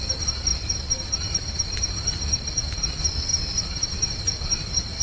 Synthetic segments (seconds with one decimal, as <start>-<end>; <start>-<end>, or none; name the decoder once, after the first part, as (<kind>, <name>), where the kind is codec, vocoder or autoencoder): 0.5-2.9 (vocoder, BigVGAN v2); 3.3-3.9